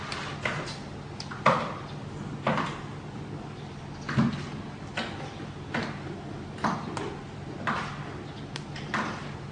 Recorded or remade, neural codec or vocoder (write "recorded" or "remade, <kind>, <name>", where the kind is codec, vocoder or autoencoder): recorded